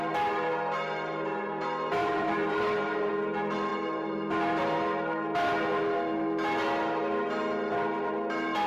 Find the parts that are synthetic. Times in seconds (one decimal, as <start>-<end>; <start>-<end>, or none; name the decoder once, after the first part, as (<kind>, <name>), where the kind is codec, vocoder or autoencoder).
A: 2.0-3.1 (vocoder, BigVGAN v2)